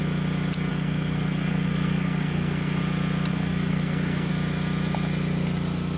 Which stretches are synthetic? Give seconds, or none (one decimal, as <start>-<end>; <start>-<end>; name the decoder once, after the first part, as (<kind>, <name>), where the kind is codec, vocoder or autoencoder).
0.7-2.8 (codec, SNAC); 3.3-4.3